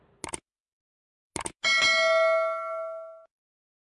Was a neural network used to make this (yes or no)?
no